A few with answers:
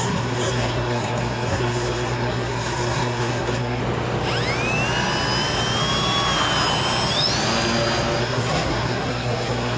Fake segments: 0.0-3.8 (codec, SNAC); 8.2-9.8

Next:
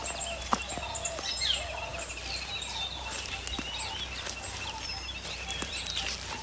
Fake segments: none

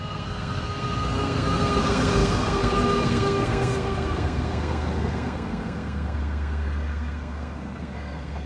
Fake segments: 0.0-8.5 (codec, SNAC)

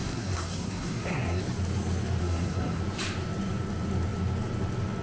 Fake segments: 0.0-1.4 (codec, SNAC); 2.2-2.8

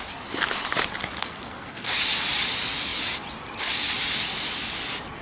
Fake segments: 1.2-1.9 (codec, SNAC)

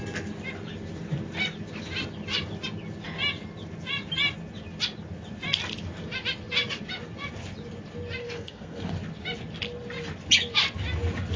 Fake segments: 8.2-8.9 (codec, SNAC)

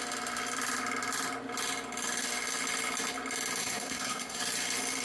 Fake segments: 3.6-4.4 (codec, SNAC)